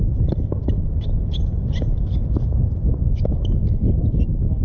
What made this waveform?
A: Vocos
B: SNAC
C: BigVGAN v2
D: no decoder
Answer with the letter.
D